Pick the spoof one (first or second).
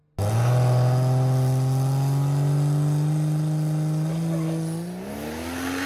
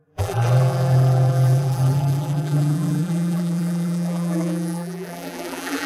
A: second